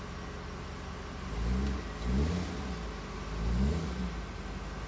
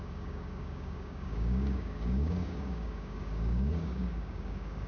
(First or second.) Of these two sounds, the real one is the first